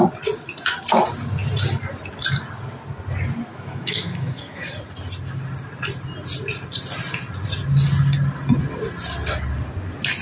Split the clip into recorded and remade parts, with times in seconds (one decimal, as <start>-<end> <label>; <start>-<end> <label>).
0.0-3.5 recorded; 3.5-4.7 remade; 4.7-10.2 recorded